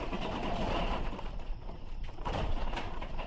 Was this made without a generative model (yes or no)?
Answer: no